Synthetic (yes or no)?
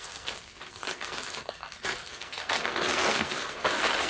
yes